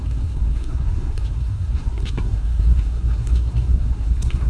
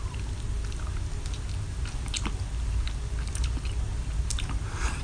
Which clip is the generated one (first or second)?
first